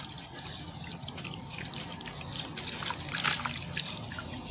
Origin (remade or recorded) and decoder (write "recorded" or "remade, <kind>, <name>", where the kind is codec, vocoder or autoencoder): recorded